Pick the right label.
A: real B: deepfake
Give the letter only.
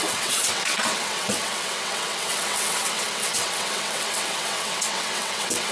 B